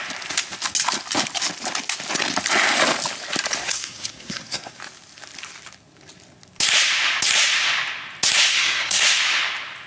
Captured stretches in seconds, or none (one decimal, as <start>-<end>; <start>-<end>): 0.0-3.6; 4.8-8.5; 9.0-9.9